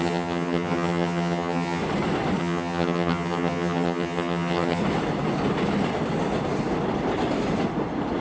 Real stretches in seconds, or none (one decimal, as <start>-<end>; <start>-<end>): 1.8-2.4; 4.8-8.2